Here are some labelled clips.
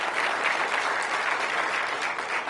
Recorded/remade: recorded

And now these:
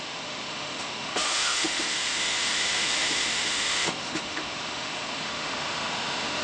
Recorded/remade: remade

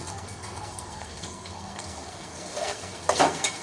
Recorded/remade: remade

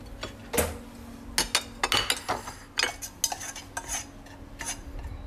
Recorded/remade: recorded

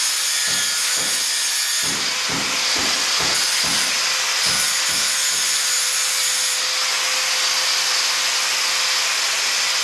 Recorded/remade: recorded